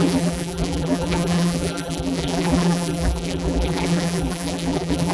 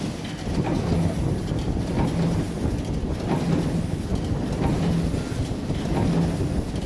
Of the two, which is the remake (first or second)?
first